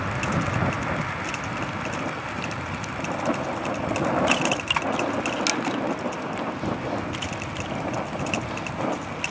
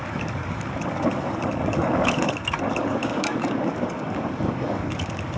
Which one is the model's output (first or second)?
second